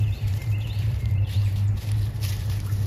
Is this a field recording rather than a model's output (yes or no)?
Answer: no